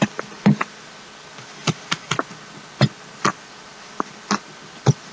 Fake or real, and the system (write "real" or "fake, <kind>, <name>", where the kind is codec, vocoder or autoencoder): real